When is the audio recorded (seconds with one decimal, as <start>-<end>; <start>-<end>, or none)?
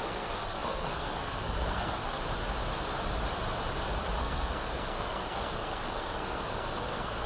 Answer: 2.2-4.2